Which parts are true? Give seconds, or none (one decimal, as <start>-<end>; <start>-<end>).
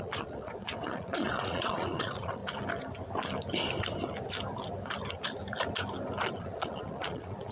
2.4-6.3